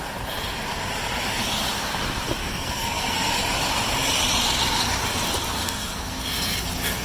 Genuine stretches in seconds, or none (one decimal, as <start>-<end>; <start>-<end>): 0.0-2.4; 3.3-5.6; 6.2-7.0